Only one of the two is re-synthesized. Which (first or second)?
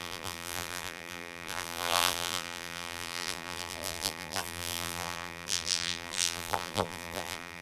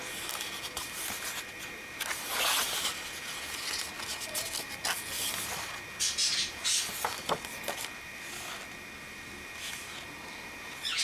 first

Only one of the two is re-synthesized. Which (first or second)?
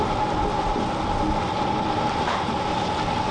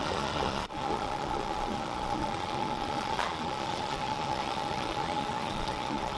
second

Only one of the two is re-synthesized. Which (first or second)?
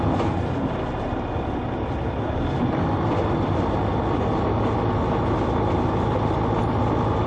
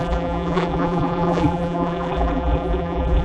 second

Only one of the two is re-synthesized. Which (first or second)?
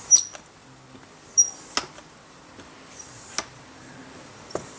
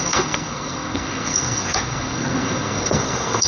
second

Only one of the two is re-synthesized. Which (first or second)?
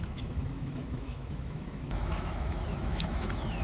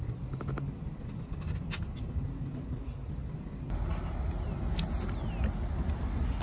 first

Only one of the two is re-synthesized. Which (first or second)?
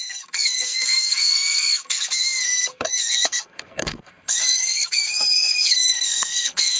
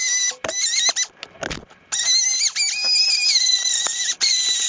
first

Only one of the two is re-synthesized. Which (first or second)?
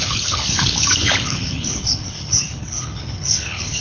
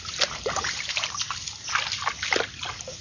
first